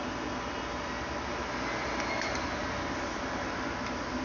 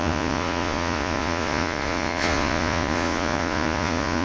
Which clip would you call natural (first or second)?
first